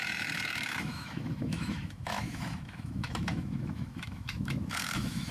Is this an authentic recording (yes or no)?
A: no